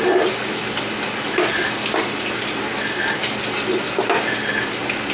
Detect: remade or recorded recorded